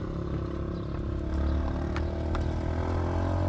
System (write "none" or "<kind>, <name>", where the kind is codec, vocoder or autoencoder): none